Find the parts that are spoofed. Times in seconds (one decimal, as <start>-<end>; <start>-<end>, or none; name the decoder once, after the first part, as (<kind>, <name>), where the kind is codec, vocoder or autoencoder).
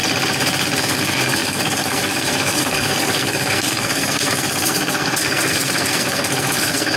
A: 0.8-7.0 (codec, SNAC)